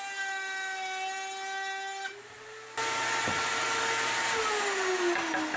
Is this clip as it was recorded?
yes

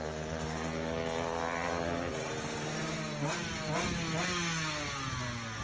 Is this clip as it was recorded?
yes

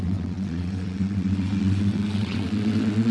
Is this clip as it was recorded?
no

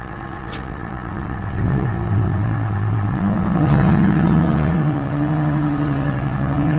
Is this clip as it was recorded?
no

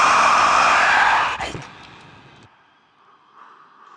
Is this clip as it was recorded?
yes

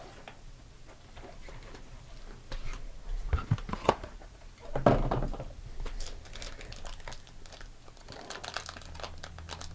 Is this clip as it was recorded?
yes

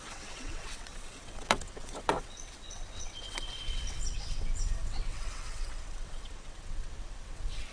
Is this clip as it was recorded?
no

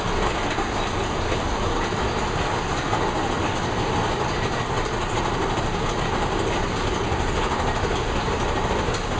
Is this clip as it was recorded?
yes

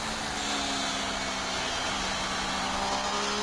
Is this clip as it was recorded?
yes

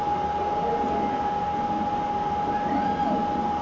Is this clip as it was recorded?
yes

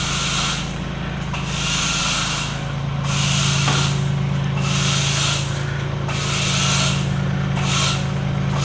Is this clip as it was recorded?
yes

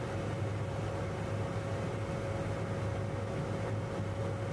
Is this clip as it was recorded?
yes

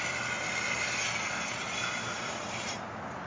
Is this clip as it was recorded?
yes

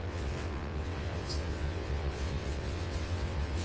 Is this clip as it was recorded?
no